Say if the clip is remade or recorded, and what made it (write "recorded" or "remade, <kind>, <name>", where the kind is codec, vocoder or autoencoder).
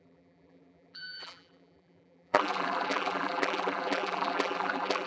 remade, vocoder, BigVGAN v2